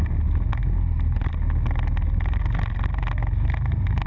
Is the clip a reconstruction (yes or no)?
no